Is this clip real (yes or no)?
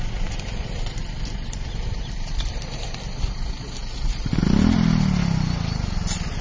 yes